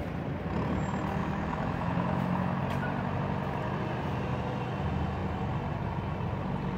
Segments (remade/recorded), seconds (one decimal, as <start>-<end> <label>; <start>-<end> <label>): 0.0-1.2 recorded; 1.2-2.6 remade; 2.6-6.8 recorded